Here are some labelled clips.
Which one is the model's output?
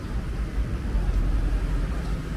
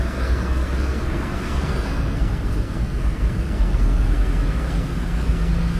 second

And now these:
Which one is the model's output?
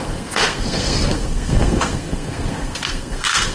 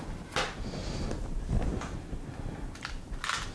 first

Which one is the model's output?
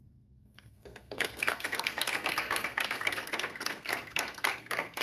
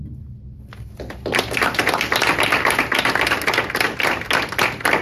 first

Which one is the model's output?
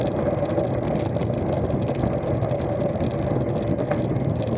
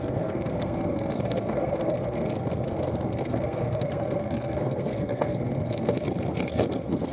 second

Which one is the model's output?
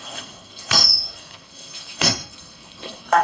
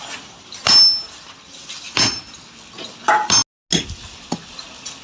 first